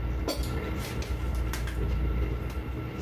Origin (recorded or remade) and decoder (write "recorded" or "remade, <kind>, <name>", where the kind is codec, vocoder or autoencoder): recorded